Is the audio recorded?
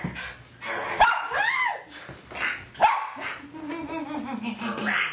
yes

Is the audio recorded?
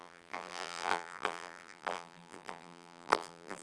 no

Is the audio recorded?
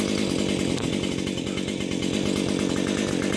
yes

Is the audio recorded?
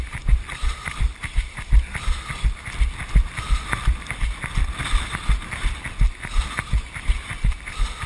yes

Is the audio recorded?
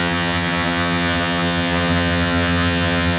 no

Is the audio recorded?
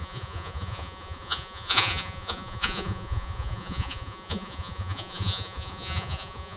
no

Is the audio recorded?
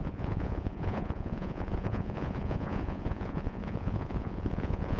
no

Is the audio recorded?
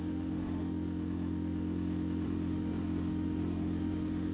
no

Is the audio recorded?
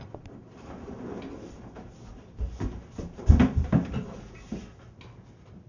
yes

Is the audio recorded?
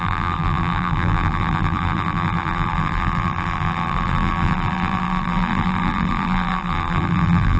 no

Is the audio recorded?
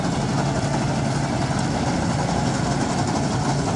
yes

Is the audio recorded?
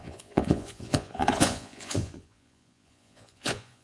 no